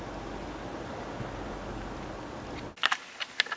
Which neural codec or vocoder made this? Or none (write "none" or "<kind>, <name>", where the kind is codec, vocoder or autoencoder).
none